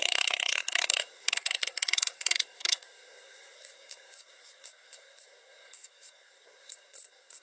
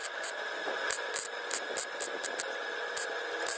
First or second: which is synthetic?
first